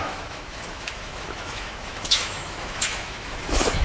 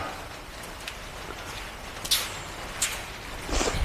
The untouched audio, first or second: second